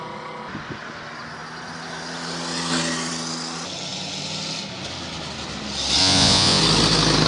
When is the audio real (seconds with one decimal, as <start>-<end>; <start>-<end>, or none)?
0.0-6.0; 6.6-7.3